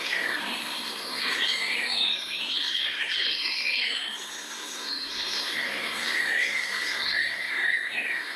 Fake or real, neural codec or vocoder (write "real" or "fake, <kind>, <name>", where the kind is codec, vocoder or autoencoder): fake, codec, SNAC